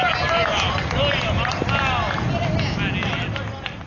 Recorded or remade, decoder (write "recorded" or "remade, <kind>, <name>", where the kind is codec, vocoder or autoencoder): recorded